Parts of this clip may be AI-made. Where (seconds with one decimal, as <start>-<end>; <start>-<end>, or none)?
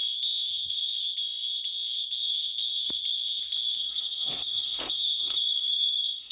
3.8-6.3